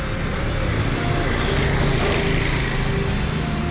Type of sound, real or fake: real